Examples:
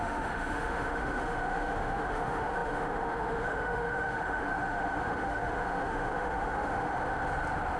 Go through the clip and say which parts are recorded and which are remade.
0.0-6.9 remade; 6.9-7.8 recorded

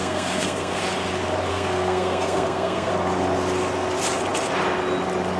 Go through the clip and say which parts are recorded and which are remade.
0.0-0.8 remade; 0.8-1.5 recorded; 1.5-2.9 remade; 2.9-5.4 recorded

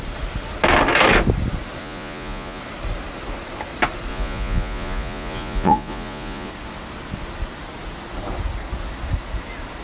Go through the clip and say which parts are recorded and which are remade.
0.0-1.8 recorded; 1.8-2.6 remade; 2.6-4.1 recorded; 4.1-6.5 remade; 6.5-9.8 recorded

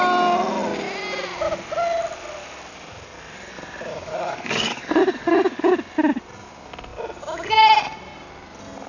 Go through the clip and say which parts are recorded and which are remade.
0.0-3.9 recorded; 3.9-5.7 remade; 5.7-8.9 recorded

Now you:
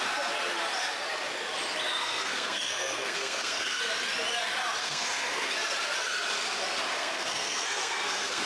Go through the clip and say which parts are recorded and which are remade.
0.0-2.0 recorded; 2.0-3.8 remade; 3.8-4.8 recorded; 4.8-5.5 remade; 5.5-6.9 recorded; 6.9-8.5 remade

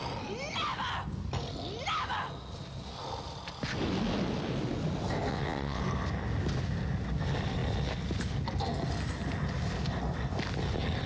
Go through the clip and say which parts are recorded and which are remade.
0.0-5.3 recorded; 5.3-5.8 remade; 5.8-11.1 recorded

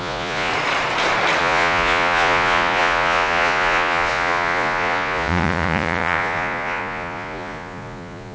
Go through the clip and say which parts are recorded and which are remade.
0.0-0.5 remade; 0.5-1.4 recorded; 1.4-8.3 remade